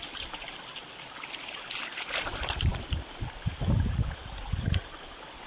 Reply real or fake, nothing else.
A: real